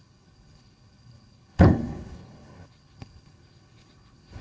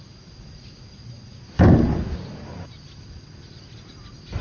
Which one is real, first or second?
second